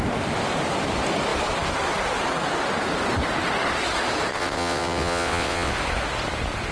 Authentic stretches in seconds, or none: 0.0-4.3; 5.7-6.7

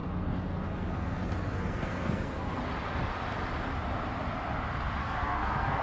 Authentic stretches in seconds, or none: 2.6-5.0

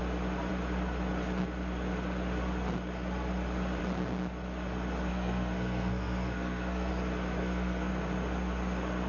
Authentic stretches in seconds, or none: 0.0-5.1; 6.9-7.4; 7.9-9.1

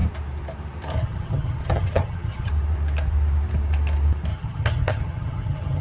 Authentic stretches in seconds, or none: 0.0-1.0; 2.5-4.3

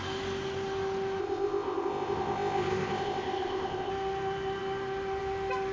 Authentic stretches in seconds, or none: 0.0-1.2; 3.9-5.7

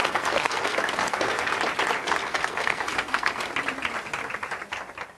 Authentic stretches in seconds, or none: 1.5-2.0; 3.4-5.2

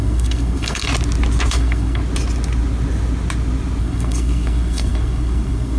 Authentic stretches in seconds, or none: 0.9-1.5; 2.0-3.8